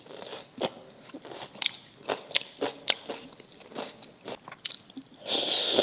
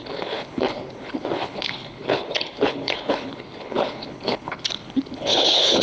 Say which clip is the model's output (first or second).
second